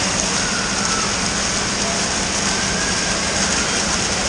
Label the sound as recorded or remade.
recorded